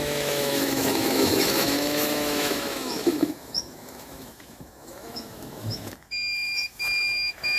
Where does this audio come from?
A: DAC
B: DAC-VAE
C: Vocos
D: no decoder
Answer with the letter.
B